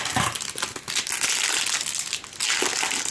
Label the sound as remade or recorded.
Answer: recorded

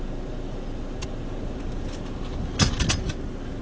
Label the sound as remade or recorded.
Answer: recorded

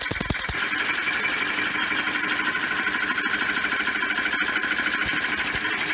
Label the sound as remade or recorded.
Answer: recorded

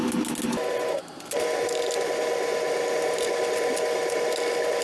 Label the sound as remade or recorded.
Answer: recorded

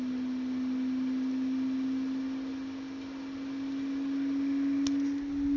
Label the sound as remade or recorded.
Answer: recorded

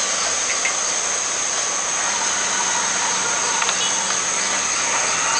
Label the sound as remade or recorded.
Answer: recorded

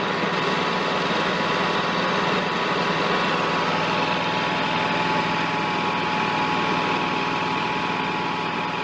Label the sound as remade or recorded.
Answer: recorded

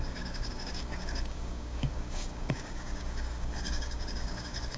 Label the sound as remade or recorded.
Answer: remade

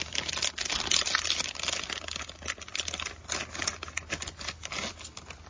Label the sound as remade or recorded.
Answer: recorded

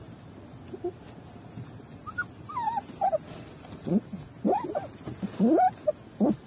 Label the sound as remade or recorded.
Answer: recorded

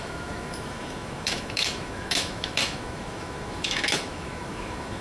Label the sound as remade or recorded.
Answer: remade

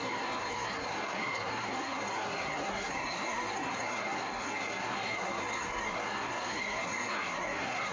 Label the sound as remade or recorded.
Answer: remade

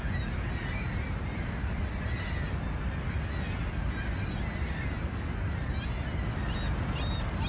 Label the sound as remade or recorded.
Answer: recorded